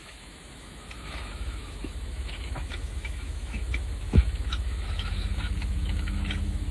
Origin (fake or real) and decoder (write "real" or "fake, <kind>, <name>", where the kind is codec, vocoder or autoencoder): fake, autoencoder, DAC-VAE